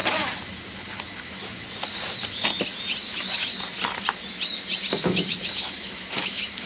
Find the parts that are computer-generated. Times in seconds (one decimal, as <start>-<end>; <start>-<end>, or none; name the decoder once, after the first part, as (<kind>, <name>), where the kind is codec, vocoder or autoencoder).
1.2-1.6 (autoencoder, DAC-VAE); 3.0-3.5; 4.9-6.7